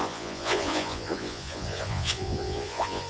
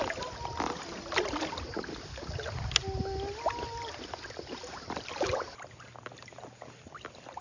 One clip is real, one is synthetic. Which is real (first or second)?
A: second